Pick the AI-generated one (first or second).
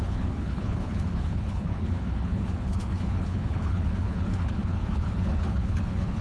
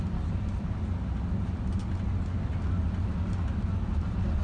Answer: first